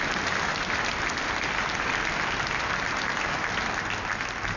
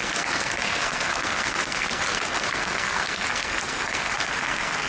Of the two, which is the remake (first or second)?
second